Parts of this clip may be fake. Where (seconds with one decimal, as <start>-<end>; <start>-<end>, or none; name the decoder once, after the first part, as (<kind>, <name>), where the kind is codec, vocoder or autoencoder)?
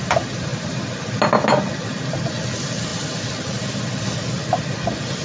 none